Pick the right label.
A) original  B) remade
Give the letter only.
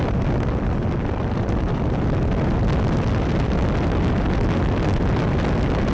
A